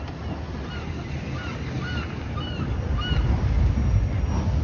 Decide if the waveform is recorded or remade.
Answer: recorded